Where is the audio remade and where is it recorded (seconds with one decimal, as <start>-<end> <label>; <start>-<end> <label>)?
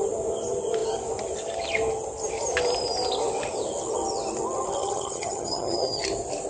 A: 0.0-4.8 recorded; 4.8-6.0 remade; 6.0-6.5 recorded